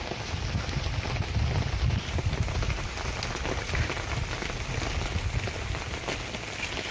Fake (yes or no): no